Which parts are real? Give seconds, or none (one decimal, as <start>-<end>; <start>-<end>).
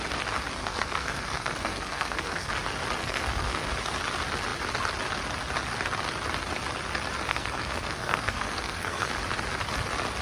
0.0-0.6; 2.5-3.0; 3.7-7.3; 9.1-10.2